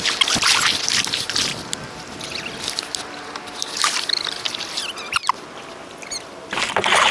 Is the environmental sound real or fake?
real